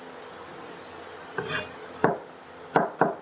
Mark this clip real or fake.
real